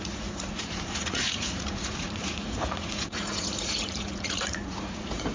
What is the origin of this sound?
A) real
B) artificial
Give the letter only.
B